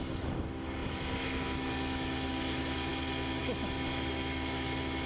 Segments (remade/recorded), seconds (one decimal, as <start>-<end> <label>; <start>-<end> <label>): 0.0-2.9 remade; 2.9-3.4 recorded; 3.4-5.1 remade